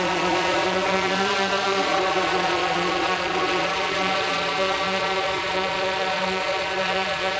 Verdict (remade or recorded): remade